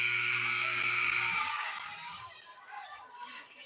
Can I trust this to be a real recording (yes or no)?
no